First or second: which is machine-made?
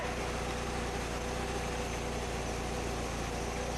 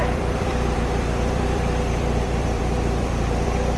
second